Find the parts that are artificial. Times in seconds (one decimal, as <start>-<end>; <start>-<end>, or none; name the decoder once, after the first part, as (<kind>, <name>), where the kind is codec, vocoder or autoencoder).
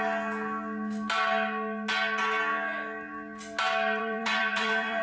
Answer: 4.0-5.0 (vocoder, BigVGAN v2)